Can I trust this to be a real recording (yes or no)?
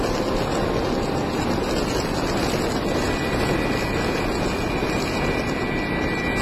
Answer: yes